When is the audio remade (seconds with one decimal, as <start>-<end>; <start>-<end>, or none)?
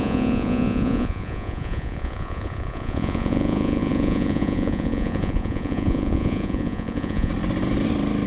0.0-7.3